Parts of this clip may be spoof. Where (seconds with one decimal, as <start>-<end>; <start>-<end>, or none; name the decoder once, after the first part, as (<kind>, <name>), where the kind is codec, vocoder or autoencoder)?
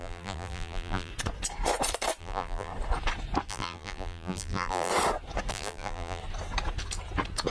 0.0-1.1 (vocoder, BigVGAN v2); 2.2-2.7; 3.5-4.9; 5.5-6.2